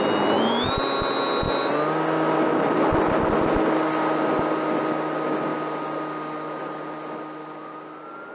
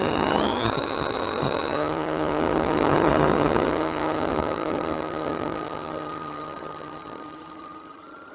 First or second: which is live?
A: first